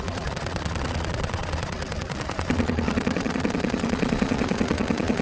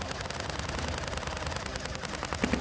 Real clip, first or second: second